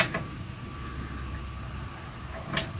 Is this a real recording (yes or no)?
yes